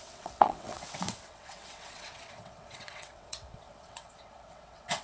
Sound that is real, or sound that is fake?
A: fake